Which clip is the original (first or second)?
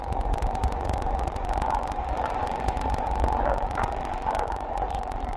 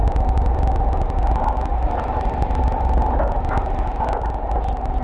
second